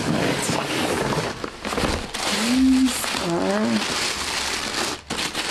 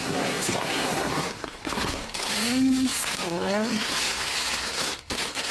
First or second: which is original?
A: first